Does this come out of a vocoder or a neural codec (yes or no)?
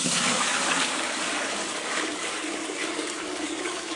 yes